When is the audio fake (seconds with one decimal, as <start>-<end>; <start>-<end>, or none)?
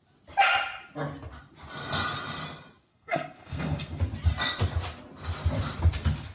2.9-4.0